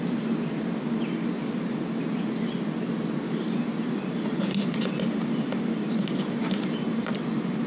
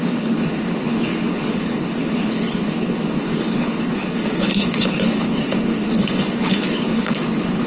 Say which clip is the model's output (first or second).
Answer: second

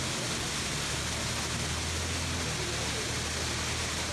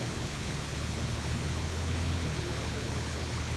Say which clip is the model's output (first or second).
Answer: second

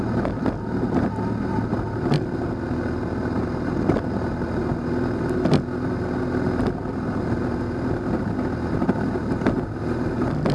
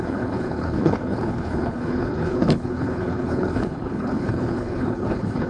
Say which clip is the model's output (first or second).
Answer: second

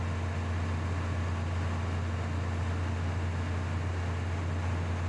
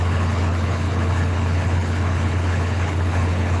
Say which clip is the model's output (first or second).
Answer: second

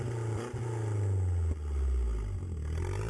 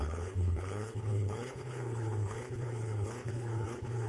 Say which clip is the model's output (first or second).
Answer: second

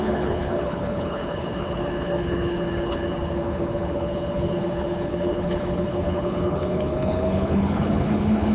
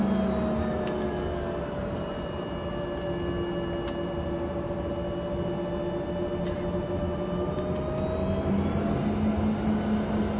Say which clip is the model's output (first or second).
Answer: first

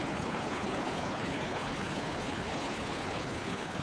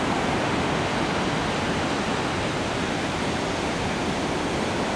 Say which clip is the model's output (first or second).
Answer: first